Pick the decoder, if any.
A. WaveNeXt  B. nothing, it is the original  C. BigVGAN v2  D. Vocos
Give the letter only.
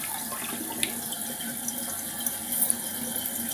B